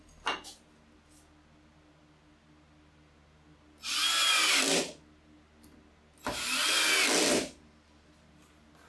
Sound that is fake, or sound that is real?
real